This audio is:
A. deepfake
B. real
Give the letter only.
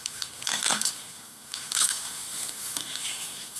A